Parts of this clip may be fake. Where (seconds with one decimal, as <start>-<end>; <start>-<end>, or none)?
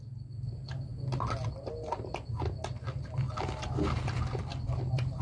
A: none